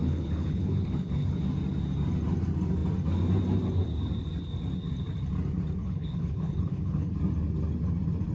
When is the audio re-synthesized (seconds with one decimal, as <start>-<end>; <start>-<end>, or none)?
0.0-1.4; 5.8-7.1